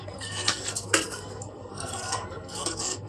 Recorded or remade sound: remade